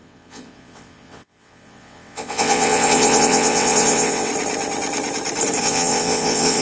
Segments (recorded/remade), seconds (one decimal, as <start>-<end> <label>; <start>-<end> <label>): 0.0-4.3 remade; 4.3-5.6 recorded; 5.6-6.6 remade